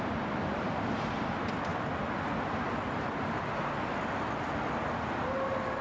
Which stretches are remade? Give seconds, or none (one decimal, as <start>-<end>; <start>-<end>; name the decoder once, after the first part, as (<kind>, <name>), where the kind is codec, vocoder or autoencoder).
none